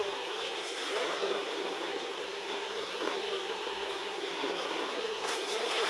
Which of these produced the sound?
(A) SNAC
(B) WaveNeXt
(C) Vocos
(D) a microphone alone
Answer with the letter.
A